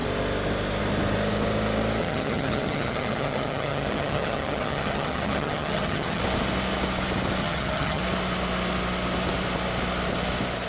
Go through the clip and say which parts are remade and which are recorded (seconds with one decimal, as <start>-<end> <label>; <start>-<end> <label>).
0.0-2.0 recorded; 2.0-6.2 remade; 6.2-7.4 recorded; 7.4-8.0 remade; 8.0-10.7 recorded